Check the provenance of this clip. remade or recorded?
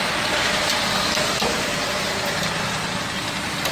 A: recorded